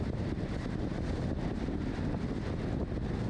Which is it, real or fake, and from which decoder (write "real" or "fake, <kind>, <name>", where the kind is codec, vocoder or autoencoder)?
real